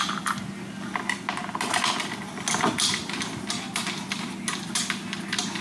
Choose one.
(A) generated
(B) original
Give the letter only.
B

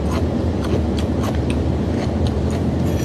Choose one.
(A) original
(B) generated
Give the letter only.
A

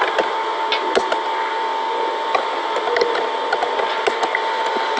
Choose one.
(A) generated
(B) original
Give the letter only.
B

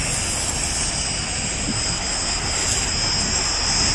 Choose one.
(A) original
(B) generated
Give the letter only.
A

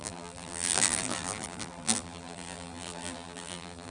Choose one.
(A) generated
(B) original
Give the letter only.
A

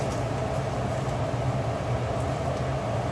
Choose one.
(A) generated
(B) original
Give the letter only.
B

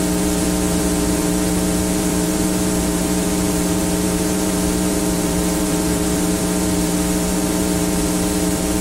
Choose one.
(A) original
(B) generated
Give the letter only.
B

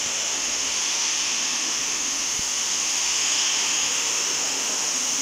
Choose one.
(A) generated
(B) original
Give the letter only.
A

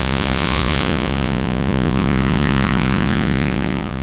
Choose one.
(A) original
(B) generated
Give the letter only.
B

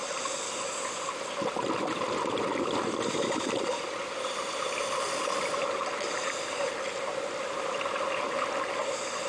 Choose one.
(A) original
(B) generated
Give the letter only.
A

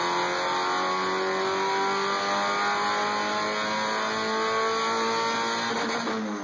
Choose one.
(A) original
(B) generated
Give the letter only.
A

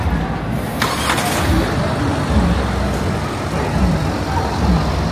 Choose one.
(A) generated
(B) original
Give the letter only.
B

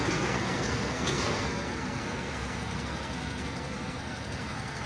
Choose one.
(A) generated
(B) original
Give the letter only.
A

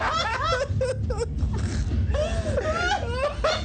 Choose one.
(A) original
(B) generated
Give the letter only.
A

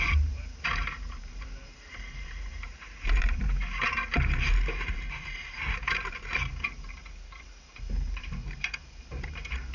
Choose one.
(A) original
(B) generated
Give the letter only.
B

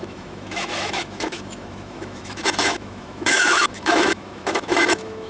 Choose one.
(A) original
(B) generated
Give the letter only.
B